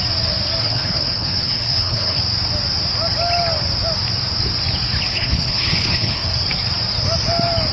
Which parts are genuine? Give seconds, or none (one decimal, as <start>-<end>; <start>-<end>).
0.0-0.6; 2.2-5.1; 6.3-7.7